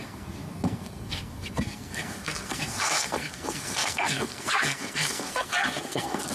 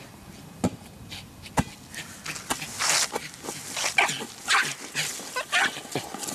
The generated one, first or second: first